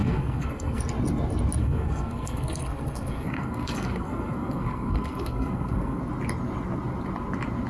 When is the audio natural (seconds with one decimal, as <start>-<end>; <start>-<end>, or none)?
0.8-1.6; 6.0-7.7